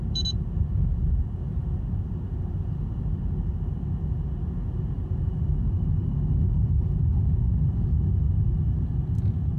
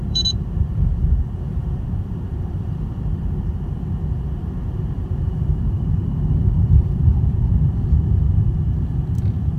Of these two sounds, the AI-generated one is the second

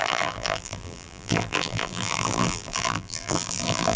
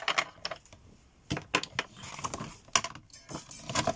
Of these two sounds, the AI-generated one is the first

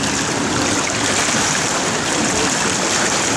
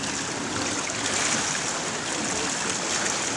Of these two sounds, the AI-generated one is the first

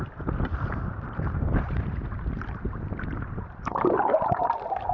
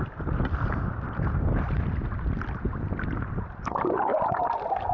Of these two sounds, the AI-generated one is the first